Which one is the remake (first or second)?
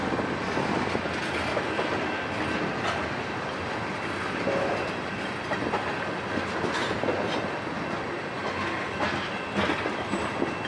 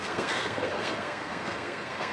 second